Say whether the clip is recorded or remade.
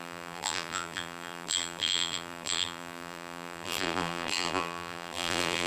remade